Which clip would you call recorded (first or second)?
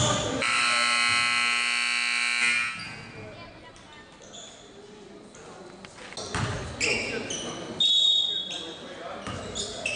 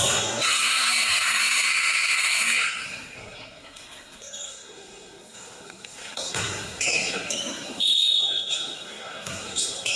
first